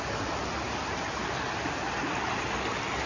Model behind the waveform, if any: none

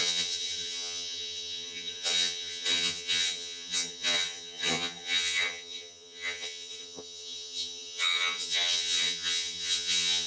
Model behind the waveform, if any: vocoder, HiFi-GAN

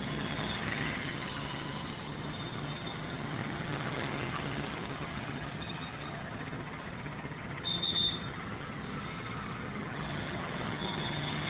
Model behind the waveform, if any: vocoder, HiFi-GAN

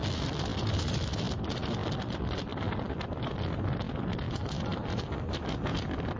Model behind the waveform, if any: none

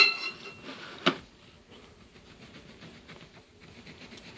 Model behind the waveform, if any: none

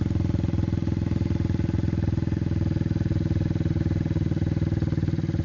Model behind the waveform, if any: none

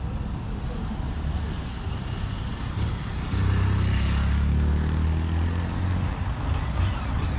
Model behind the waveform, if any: none